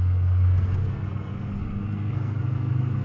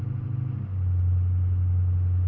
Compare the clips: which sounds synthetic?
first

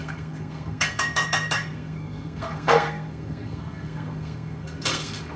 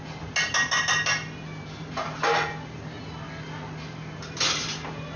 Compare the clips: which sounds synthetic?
first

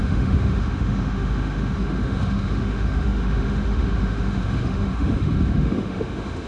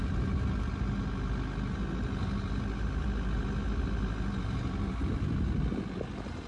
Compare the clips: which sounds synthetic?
first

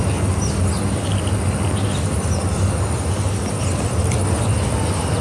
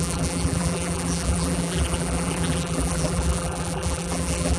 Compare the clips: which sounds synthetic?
second